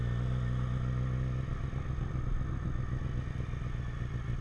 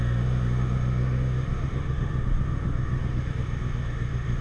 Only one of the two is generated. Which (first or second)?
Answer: second